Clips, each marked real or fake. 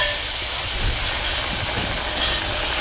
real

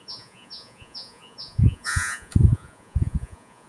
fake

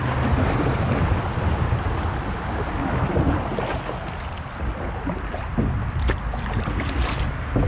real